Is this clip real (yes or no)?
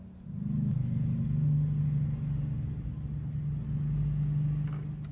yes